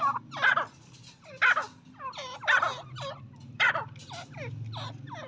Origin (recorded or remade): recorded